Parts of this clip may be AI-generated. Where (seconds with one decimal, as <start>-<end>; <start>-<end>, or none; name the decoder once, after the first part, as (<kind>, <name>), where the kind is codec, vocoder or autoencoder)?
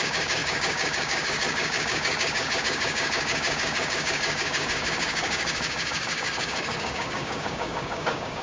0.0-8.4 (codec, DAC)